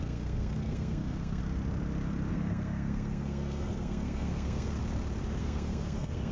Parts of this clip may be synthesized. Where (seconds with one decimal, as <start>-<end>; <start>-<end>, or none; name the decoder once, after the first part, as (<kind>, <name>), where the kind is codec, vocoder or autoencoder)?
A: 0.0-1.4 (codec, SNAC); 2.3-4.8; 5.4-6.3